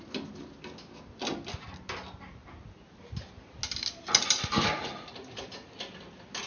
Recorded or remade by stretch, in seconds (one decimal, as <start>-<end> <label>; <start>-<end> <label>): 0.0-6.5 recorded